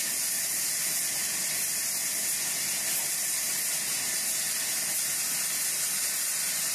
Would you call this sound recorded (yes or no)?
yes